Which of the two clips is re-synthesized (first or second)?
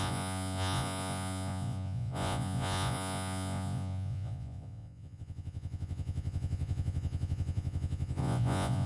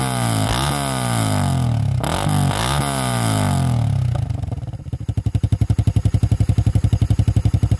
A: first